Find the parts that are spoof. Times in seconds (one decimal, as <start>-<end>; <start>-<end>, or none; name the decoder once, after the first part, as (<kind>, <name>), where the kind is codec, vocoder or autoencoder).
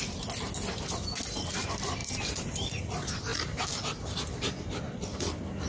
2.0-2.8 (vocoder, BigVGAN v2)